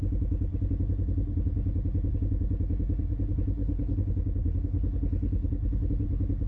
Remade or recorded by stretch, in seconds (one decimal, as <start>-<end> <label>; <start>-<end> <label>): 0.0-3.6 recorded; 3.6-5.9 remade; 5.9-6.5 recorded